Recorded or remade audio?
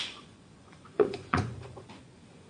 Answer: remade